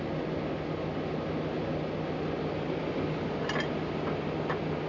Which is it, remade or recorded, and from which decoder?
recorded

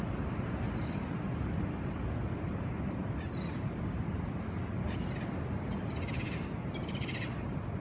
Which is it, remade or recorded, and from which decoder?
recorded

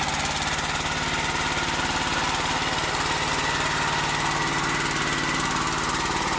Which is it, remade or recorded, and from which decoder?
recorded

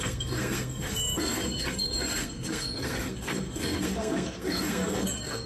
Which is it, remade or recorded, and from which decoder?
remade, codec, SNAC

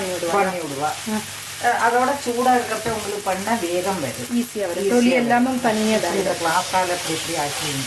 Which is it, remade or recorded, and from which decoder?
recorded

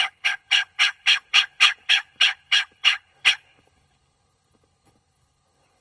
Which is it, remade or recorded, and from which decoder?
remade, codec, HILCodec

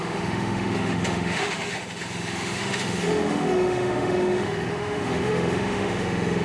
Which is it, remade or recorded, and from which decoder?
remade, autoencoder, DAC-VAE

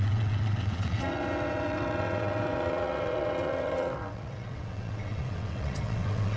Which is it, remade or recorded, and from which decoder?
remade, vocoder, WaveNeXt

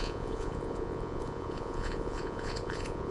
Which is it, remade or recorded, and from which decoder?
remade, vocoder, Vocos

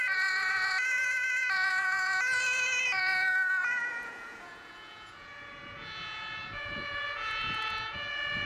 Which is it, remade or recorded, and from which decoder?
remade, vocoder, Vocos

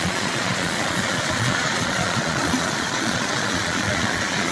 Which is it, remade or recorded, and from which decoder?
remade, vocoder, Vocos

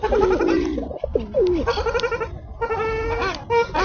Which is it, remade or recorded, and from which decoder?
recorded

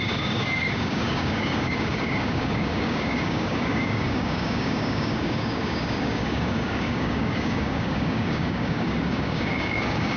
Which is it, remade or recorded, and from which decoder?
remade, codec, DAC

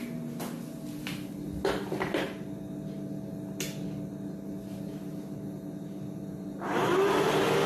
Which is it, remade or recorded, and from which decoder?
recorded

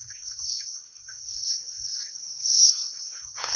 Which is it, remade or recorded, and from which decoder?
remade, codec, SNAC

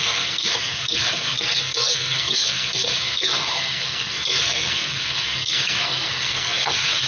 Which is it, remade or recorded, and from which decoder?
remade, codec, SNAC